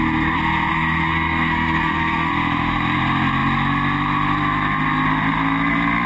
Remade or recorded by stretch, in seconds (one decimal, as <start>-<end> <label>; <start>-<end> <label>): 0.0-0.7 recorded; 0.7-2.3 remade; 2.3-6.1 recorded

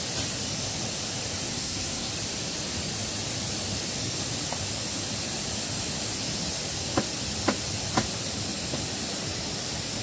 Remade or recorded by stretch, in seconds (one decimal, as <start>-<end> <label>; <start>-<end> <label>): 0.0-1.5 recorded; 1.5-2.1 remade; 2.1-10.0 recorded

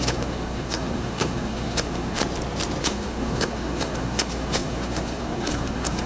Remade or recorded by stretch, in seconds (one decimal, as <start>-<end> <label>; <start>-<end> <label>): 0.0-2.2 remade; 2.2-2.8 recorded; 2.8-6.1 remade

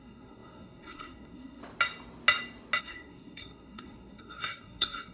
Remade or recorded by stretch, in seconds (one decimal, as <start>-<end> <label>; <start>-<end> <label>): 0.0-1.6 remade; 1.6-2.8 recorded; 2.8-5.1 remade

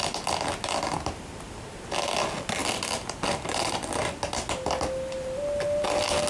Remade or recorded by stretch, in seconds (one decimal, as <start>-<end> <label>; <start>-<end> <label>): 0.0-6.3 recorded

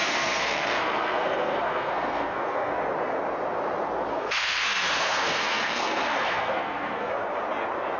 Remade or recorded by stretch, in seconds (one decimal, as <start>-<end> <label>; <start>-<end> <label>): 0.0-2.8 remade; 2.8-4.1 recorded; 4.1-7.1 remade; 7.1-8.0 recorded

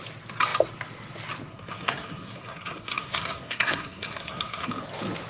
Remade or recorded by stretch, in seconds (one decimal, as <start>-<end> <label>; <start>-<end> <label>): 0.0-1.5 recorded; 1.5-4.7 remade; 4.7-5.3 recorded

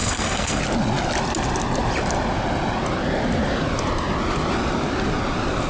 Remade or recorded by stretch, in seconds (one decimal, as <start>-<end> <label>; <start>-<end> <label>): 0.0-0.6 remade; 0.6-5.7 recorded